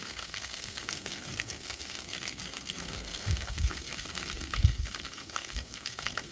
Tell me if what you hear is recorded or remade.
remade